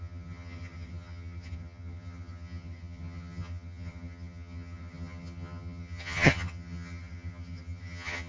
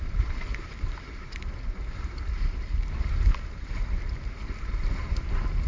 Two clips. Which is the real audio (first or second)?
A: second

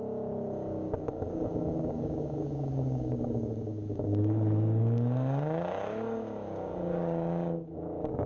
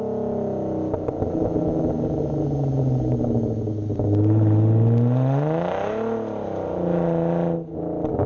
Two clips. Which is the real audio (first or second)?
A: second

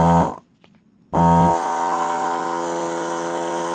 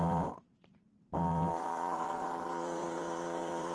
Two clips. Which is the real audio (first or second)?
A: first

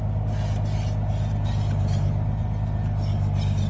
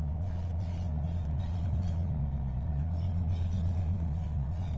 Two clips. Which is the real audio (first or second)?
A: first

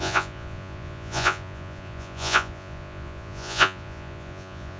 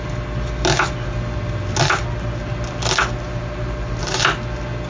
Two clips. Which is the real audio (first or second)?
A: second